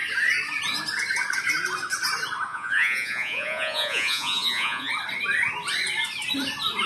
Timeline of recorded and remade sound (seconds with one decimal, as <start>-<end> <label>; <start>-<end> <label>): 0.0-2.5 recorded; 2.5-4.9 remade; 4.9-6.9 recorded

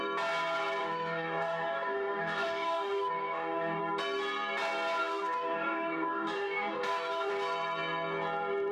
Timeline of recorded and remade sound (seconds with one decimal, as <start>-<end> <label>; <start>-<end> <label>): 0.0-0.8 recorded; 0.8-3.8 remade; 3.8-5.0 recorded; 5.0-7.3 remade; 7.3-8.7 recorded

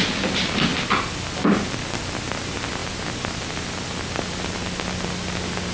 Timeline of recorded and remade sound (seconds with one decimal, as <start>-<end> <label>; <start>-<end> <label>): 0.0-5.7 recorded

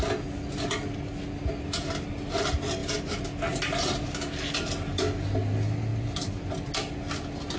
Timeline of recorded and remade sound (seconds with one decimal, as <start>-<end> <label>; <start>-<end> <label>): 0.0-7.6 recorded